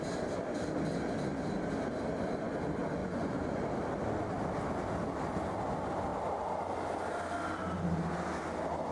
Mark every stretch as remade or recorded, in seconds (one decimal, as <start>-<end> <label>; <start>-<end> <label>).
0.0-3.0 recorded; 3.0-3.6 remade; 3.6-8.9 recorded